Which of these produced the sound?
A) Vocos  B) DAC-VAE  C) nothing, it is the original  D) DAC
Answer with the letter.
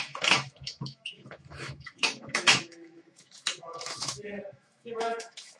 B